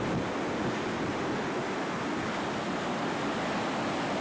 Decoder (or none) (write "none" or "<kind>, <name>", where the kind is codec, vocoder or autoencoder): none